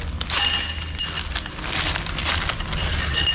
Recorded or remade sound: recorded